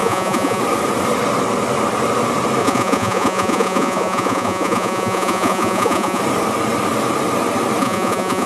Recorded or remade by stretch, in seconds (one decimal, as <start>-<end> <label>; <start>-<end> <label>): 0.0-0.6 remade; 0.6-2.6 recorded; 2.6-6.2 remade; 6.2-7.8 recorded; 7.8-8.5 remade